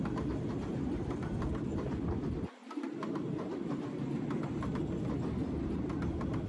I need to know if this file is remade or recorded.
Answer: recorded